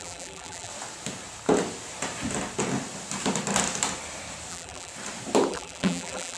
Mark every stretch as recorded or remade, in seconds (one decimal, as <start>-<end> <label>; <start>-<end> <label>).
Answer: 0.0-0.7 remade; 0.7-4.5 recorded; 4.5-4.9 remade; 4.9-5.5 recorded; 5.5-6.4 remade